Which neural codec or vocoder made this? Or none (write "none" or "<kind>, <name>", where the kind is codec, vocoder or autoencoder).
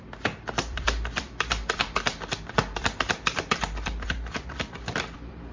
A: vocoder, BigVGAN v2